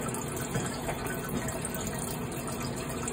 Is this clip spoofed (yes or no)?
no